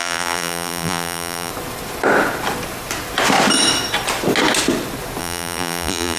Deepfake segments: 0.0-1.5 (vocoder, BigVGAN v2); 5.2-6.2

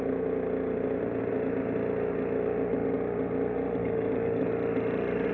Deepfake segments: 3.8-4.5 (codec, DAC)

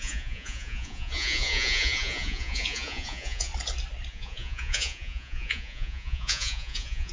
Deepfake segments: 0.0-3.5 (vocoder, Vocos); 4.1-7.1

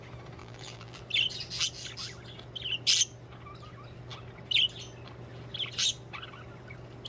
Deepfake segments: 0.4-1.0 (vocoder, BigVGAN v2)